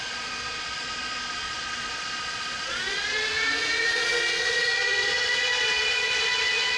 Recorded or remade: remade